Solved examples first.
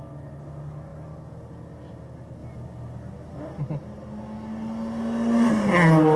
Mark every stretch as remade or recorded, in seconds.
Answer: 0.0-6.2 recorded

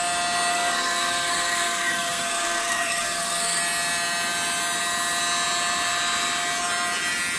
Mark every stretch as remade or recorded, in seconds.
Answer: 0.0-0.5 recorded; 0.5-3.6 remade; 3.6-7.4 recorded

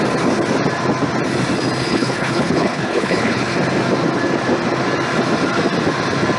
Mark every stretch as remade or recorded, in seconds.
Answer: 0.0-1.8 recorded; 1.8-3.4 remade; 3.4-6.4 recorded

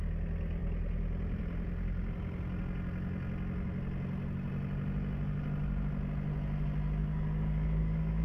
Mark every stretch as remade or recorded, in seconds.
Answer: 0.0-7.0 recorded; 7.0-8.2 remade

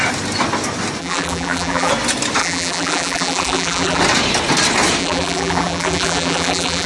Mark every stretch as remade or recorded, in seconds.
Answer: 0.0-1.0 recorded; 1.0-1.9 remade; 1.9-2.4 recorded; 2.4-4.0 remade; 4.0-5.0 recorded; 5.0-6.9 remade

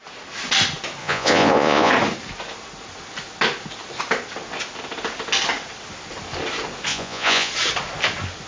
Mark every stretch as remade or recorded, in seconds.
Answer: 0.0-1.0 recorded; 1.0-1.9 remade; 1.9-6.9 recorded; 6.9-7.5 remade; 7.5-8.5 recorded

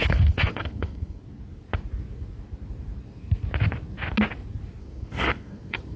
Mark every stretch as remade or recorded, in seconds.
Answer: 0.0-1.2 remade; 1.2-4.8 recorded; 4.8-6.0 remade

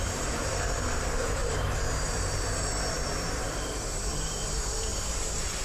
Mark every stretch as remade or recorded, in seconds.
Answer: 0.0-5.6 remade